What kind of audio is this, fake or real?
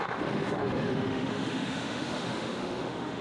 fake